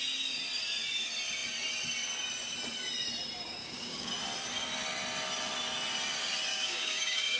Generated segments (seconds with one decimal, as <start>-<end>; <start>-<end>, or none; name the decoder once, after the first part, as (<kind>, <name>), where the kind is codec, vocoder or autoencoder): 3.6-4.1 (codec, DAC); 6.5-7.4